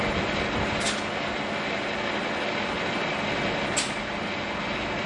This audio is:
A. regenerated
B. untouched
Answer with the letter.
B